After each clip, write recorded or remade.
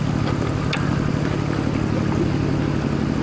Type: recorded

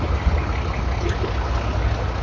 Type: recorded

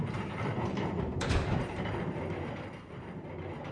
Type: remade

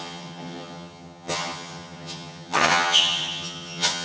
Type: remade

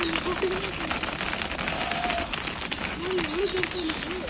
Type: recorded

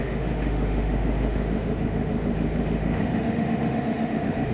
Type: remade